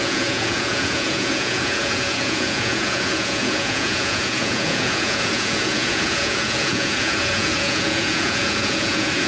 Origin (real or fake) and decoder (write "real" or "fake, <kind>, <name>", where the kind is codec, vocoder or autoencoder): fake, vocoder, Vocos